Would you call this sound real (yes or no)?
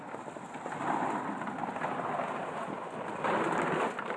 yes